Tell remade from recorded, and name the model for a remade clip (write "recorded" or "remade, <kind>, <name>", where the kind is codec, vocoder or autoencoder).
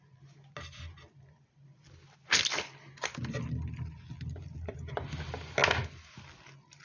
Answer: recorded